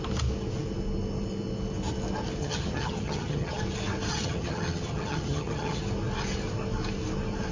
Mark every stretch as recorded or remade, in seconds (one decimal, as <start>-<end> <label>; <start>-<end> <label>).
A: 0.0-2.4 recorded; 2.4-3.6 remade; 3.6-4.1 recorded; 4.1-5.8 remade; 5.8-7.5 recorded